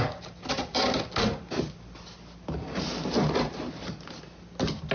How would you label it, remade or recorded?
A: recorded